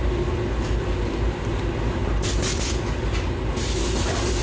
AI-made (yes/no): no